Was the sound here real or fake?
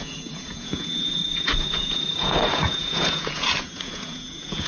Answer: fake